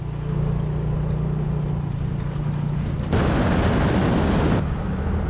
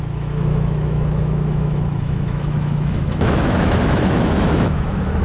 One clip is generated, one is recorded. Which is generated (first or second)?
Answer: second